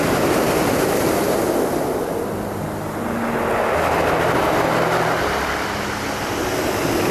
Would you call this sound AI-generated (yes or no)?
no